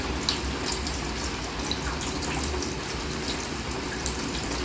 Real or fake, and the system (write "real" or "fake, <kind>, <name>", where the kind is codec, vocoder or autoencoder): real